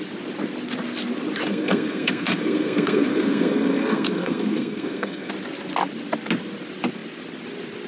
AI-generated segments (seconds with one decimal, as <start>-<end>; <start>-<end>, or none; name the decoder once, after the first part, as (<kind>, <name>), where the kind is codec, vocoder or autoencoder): 1.5-5.3 (codec, SNAC)